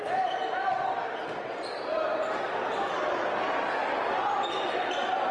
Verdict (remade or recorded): recorded